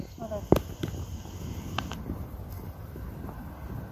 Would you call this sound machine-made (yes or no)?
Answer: no